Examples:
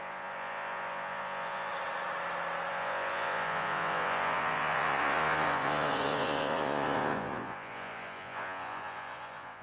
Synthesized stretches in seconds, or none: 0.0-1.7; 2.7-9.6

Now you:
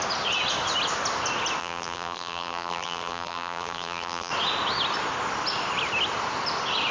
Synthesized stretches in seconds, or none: 1.6-4.3

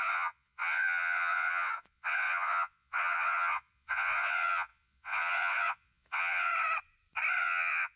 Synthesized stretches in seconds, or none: 0.0-6.5; 7.4-8.0

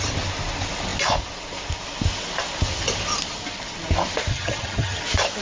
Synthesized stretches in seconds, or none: 4.3-5.0